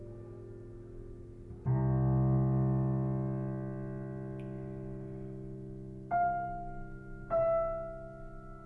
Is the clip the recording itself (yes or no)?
yes